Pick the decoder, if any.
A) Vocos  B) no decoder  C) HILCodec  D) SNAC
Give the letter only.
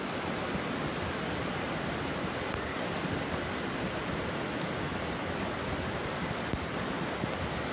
B